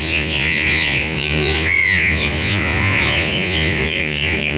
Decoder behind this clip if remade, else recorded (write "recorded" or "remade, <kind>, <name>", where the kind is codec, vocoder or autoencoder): remade, vocoder, Vocos